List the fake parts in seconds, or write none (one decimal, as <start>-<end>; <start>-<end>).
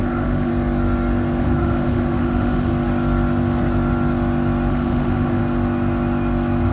0.0-0.5; 1.4-2.7; 4.7-5.4